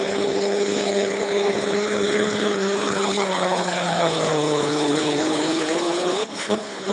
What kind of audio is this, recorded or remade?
remade